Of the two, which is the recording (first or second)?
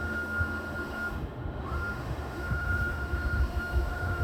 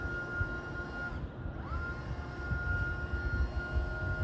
second